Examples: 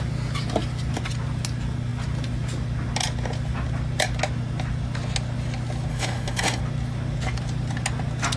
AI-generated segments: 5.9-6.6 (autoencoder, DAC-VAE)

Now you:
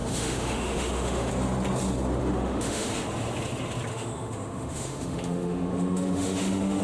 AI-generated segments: 0.0-1.3 (autoencoder, DAC-VAE); 2.2-2.9; 3.9-6.8

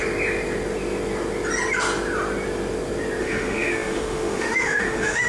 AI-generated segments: 3.2-5.3 (autoencoder, DAC-VAE)

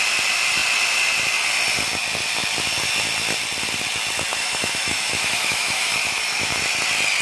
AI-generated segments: 4.3-6.6 (autoencoder, DAC-VAE)

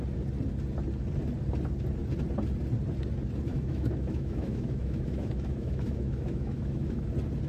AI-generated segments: 3.5-7.1 (autoencoder, DAC-VAE)

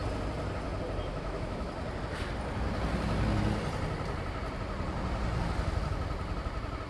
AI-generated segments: 1.1-1.7 (autoencoder, DAC-VAE)

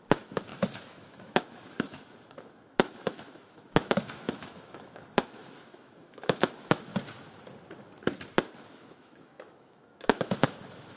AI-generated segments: 0.0-6.9 (autoencoder, DAC-VAE); 8.7-11.0

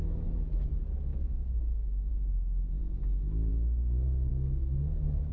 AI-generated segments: 1.1-2.1 (autoencoder, DAC-VAE); 4.3-5.3